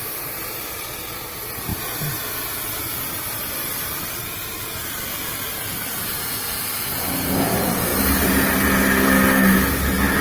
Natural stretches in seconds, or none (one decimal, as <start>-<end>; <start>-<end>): 0.0-10.2